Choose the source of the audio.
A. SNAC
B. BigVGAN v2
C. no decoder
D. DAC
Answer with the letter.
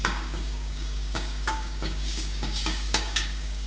D